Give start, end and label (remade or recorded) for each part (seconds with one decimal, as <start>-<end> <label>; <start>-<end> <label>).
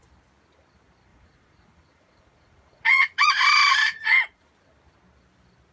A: 0.0-1.1 recorded; 1.1-4.5 remade; 4.5-5.7 recorded